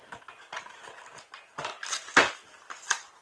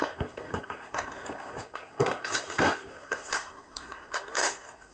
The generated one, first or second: second